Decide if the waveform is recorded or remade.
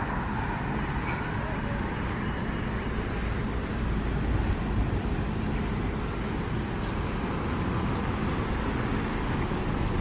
recorded